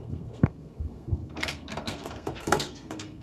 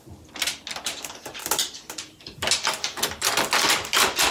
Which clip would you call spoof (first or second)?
first